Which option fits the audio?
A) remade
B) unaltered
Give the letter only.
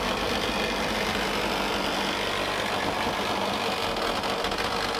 B